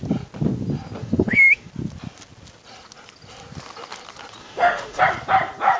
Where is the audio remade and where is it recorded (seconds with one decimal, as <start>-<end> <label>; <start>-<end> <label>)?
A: 0.0-1.0 recorded; 1.0-1.7 remade; 1.7-4.4 recorded; 4.4-5.0 remade; 5.0-5.8 recorded